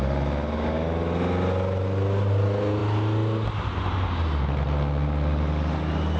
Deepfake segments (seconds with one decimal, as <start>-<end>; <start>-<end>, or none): none